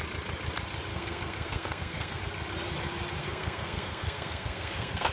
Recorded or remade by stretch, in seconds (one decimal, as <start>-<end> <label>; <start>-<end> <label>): 0.0-0.9 recorded; 0.9-2.2 remade; 2.2-3.2 recorded; 3.2-5.1 remade